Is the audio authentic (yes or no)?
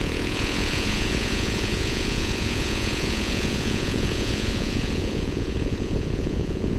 no